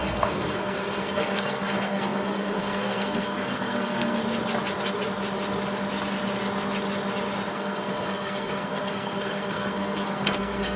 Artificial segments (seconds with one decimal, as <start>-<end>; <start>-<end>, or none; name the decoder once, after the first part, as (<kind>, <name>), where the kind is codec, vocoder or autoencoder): 0.0-4.2 (codec, SNAC); 7.5-10.8